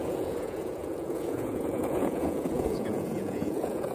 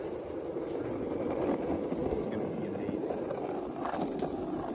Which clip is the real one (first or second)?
second